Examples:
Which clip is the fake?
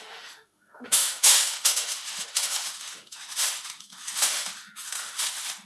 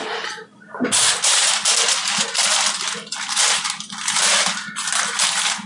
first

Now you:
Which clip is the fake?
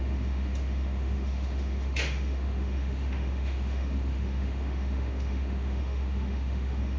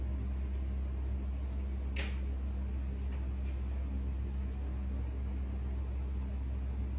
first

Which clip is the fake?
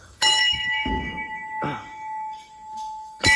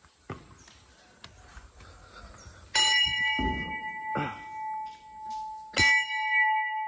first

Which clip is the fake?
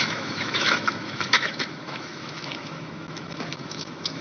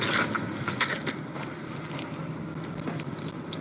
first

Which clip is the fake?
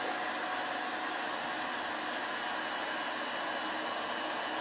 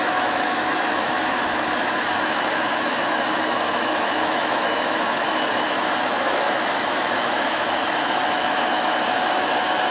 second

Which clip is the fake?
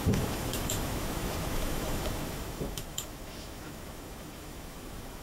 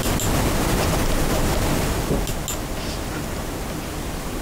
first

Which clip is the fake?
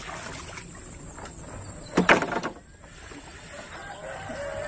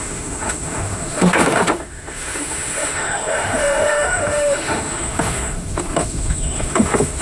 second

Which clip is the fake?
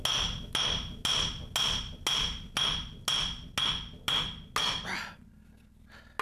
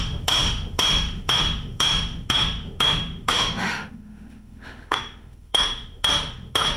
second